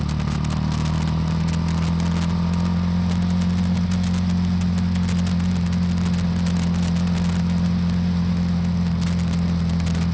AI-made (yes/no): no